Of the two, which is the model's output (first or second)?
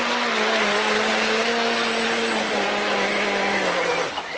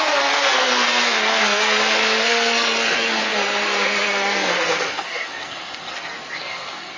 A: second